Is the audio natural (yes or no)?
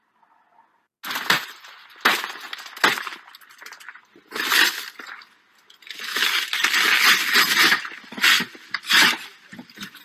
yes